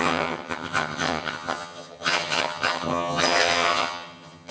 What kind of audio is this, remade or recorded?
remade